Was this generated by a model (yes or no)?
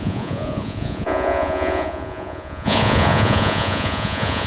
yes